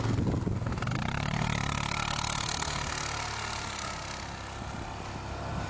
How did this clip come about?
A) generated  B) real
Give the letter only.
B